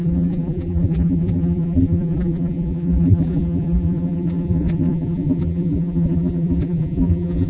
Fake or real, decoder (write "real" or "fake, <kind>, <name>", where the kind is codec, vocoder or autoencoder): fake, vocoder, BigVGAN v2